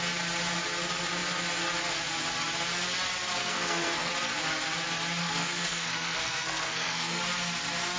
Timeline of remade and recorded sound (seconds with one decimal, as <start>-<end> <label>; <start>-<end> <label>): 0.0-3.4 recorded; 3.4-4.1 remade; 4.1-5.2 recorded; 5.2-7.2 remade; 7.2-8.0 recorded